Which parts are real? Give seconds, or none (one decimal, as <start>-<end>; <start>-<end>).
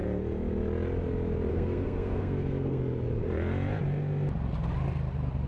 0.0-1.5; 2.8-5.5